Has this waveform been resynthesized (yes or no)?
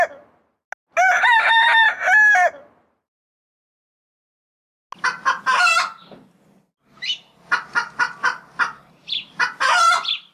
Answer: no